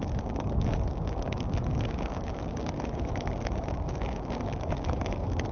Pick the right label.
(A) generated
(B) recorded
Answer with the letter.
A